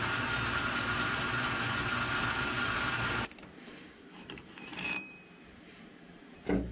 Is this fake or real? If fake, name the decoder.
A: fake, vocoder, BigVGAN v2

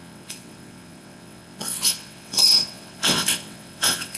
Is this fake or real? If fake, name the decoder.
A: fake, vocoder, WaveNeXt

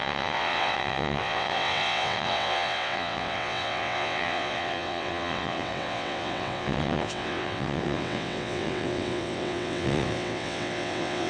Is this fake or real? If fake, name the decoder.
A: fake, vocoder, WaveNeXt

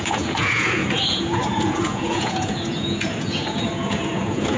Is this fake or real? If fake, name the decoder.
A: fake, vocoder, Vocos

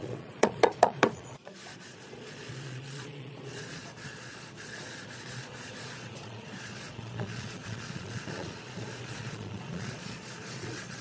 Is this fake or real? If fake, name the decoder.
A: fake, vocoder, Vocos